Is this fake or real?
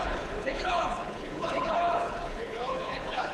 fake